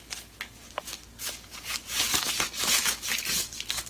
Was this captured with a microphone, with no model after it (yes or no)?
no